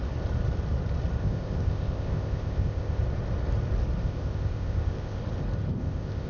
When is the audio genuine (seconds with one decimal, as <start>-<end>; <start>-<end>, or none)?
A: 0.0-1.2; 3.0-4.0; 5.2-5.8